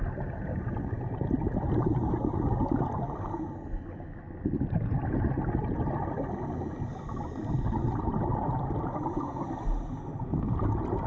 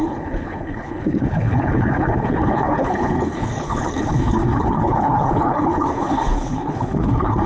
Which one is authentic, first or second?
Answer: first